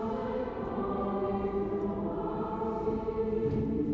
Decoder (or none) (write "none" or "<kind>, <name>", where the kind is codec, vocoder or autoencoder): none